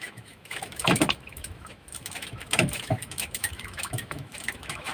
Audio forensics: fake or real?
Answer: fake